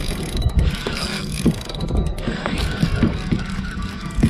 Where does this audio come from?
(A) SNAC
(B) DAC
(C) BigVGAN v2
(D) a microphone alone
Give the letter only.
A